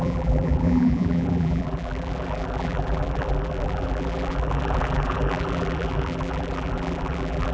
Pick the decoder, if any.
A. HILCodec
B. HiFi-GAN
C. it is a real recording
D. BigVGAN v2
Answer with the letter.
D